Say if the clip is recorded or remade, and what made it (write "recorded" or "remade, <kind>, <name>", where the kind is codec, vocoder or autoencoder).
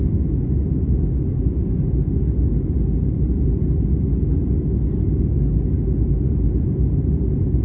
recorded